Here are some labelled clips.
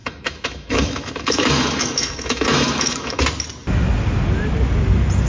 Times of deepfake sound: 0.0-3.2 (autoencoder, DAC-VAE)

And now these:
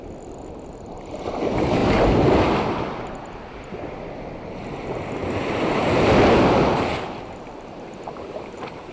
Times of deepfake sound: 5.2-5.7 (vocoder, BigVGAN v2); 6.7-7.9

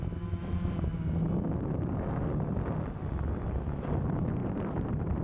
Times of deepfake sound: 4.4-5.2 (vocoder, BigVGAN v2)

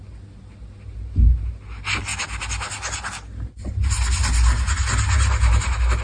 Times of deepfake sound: none